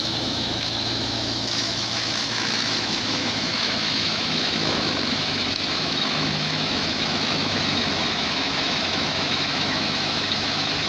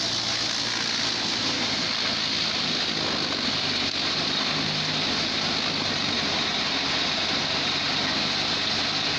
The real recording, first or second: second